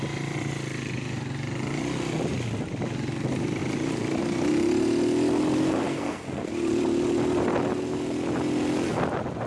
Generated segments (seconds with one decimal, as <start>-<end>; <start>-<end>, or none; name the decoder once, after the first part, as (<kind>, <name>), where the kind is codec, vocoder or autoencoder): 5.8-6.5 (codec, SNAC)